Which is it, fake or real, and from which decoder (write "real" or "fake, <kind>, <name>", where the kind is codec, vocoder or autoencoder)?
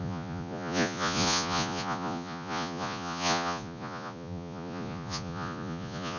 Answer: fake, vocoder, Vocos